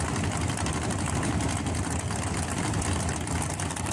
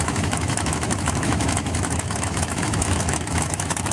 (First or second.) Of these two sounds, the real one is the first